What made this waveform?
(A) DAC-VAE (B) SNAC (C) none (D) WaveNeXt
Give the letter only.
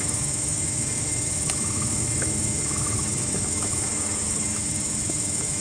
A